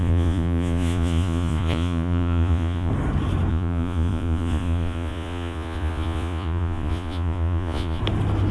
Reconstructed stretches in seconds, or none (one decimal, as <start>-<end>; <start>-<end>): 0.0-2.9; 3.5-8.0